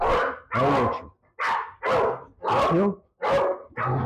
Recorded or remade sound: recorded